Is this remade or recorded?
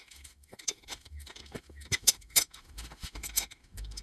remade